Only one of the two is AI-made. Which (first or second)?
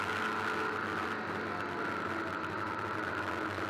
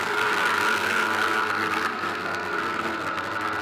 second